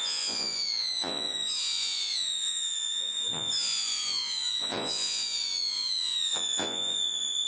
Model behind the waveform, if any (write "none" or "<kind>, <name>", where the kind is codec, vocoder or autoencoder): vocoder, Vocos